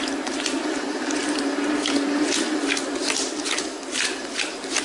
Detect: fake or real fake